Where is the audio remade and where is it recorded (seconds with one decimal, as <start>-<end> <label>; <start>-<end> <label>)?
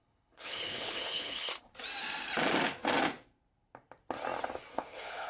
0.0-1.5 remade; 1.5-4.7 recorded; 4.7-5.3 remade